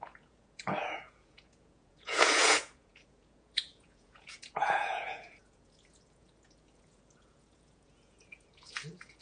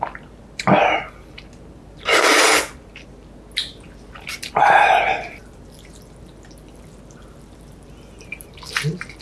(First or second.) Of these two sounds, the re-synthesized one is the first